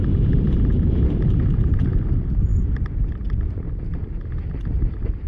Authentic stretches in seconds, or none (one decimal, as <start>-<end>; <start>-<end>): 1.9-5.3